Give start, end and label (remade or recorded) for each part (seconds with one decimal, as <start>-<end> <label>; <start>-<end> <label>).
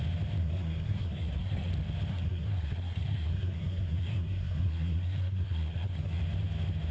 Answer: 0.0-0.4 recorded; 0.4-1.7 remade; 1.7-2.1 recorded; 2.1-6.2 remade; 6.2-6.9 recorded